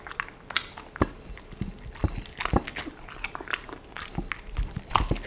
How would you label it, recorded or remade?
recorded